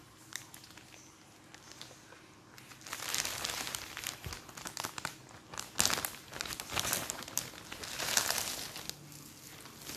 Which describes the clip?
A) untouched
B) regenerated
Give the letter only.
A